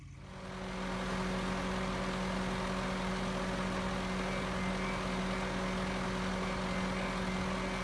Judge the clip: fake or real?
real